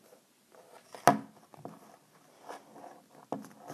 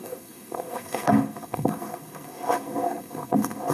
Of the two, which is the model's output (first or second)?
second